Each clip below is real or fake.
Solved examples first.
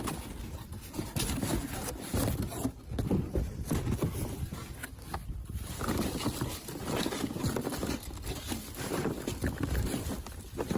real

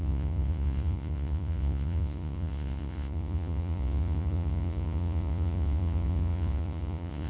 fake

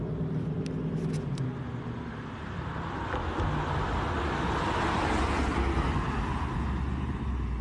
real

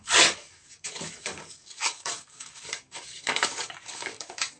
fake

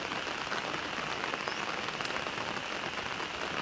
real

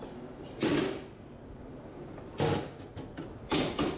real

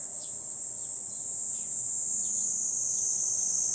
real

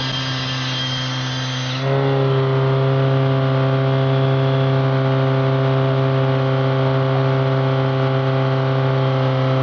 real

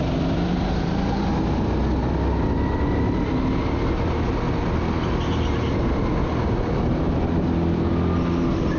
real